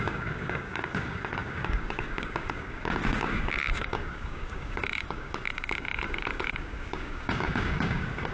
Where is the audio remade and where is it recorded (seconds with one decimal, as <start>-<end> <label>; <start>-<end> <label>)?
0.0-8.3 remade